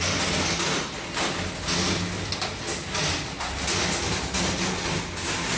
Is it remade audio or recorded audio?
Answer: recorded